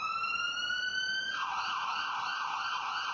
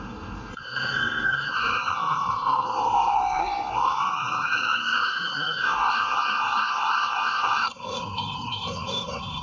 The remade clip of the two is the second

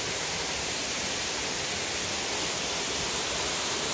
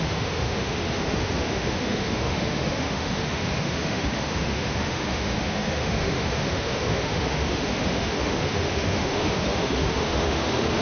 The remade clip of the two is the second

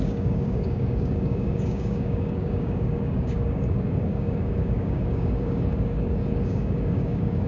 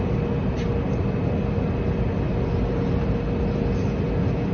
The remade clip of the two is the first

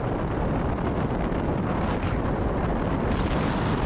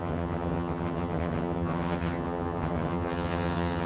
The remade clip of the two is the second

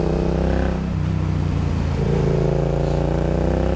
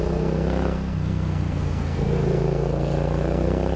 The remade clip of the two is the second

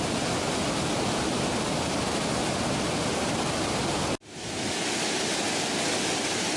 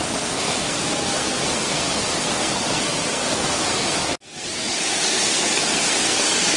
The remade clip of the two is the second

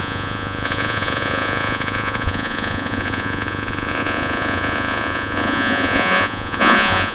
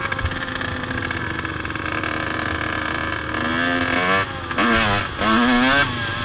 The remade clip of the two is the first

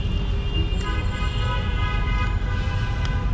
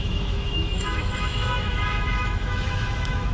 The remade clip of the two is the second